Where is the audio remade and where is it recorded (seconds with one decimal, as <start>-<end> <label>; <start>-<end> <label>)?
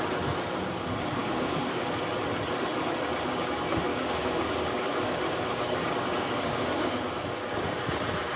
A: 0.0-1.2 recorded; 1.2-1.8 remade; 1.8-3.9 recorded; 3.9-7.0 remade; 7.0-8.4 recorded